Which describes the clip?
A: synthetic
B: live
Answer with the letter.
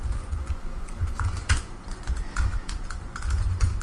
A